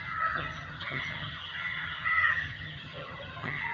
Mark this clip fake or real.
fake